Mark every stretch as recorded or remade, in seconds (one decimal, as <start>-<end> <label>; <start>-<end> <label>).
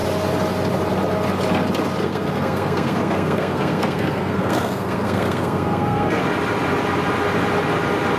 0.0-2.0 recorded; 2.0-6.2 remade; 6.2-8.2 recorded